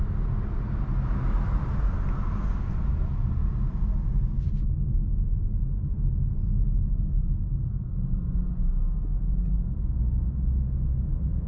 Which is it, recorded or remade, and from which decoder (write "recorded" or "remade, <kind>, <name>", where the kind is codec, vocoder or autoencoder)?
recorded